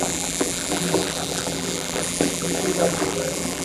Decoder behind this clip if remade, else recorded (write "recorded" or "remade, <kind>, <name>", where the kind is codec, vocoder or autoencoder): remade, vocoder, BigVGAN v2